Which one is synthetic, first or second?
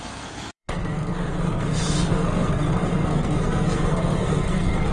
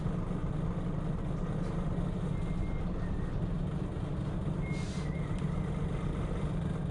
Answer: first